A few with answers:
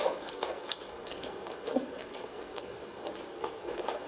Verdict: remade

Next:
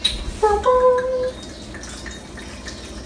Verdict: recorded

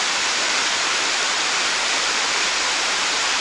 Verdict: remade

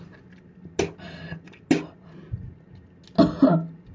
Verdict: recorded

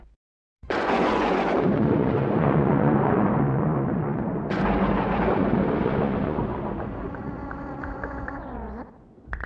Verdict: remade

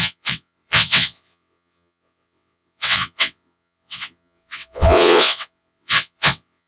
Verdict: remade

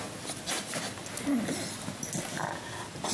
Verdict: recorded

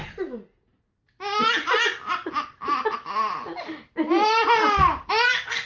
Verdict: recorded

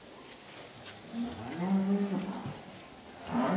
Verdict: recorded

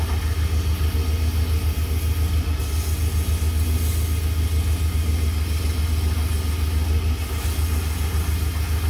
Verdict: recorded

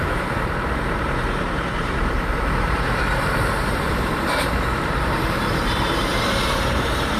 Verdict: remade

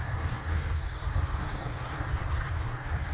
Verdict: remade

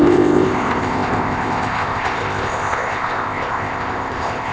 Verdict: remade